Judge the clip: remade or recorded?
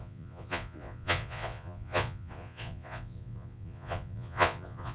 remade